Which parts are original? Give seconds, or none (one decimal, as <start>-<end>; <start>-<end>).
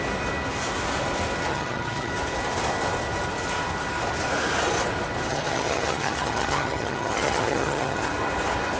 0.0-1.5; 2.1-5.3; 8.1-8.8